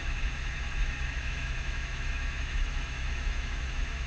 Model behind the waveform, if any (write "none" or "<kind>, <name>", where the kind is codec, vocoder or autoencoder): autoencoder, DAC-VAE